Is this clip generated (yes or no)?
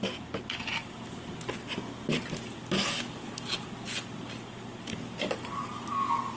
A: no